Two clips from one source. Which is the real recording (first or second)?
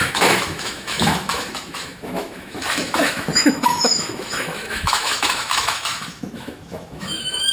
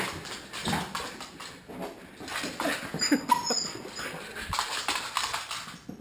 second